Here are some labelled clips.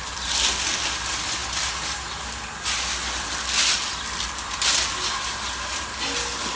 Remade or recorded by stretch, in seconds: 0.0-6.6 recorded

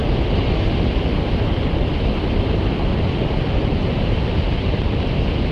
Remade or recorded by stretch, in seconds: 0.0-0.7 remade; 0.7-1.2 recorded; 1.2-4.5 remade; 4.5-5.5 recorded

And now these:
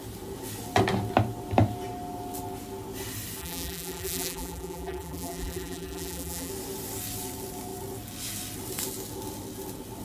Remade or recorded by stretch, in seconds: 0.0-3.4 recorded; 3.4-6.5 remade; 6.5-10.0 recorded

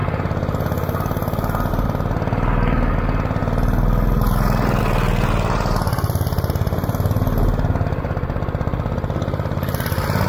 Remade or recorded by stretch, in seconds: 0.0-1.7 recorded; 1.7-10.3 remade